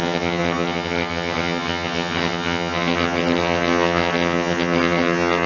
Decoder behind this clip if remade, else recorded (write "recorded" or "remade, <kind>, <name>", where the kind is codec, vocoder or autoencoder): remade, vocoder, HiFi-GAN